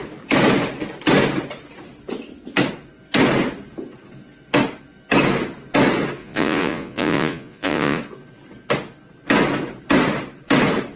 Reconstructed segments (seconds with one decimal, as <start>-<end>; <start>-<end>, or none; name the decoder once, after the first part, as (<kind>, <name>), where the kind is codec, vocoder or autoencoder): 6.2-8.0 (vocoder, Vocos)